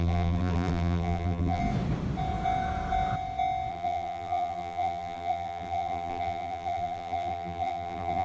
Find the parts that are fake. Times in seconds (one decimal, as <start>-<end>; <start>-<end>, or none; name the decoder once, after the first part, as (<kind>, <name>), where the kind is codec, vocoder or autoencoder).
0.0-1.6 (vocoder, BigVGAN v2); 3.7-8.2